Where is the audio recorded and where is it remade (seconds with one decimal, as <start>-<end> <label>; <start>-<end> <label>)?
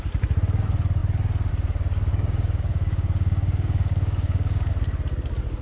0.0-2.1 recorded; 2.1-4.7 remade; 4.7-5.6 recorded